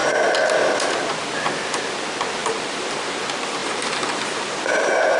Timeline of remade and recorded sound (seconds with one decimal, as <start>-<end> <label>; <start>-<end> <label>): 0.0-2.4 recorded; 2.4-3.2 remade; 3.2-3.6 recorded; 3.6-4.7 remade; 4.7-5.2 recorded